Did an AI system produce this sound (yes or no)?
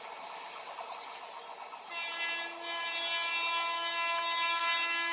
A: no